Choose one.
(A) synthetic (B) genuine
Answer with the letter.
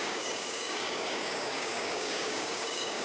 A